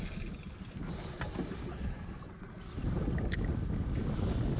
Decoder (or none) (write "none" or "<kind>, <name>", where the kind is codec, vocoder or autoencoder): none